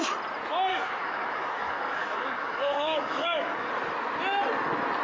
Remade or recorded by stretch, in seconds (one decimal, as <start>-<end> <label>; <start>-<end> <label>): 0.0-0.7 recorded; 0.7-3.7 remade; 3.7-5.0 recorded